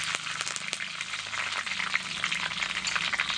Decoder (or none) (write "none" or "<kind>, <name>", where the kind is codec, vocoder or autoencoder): none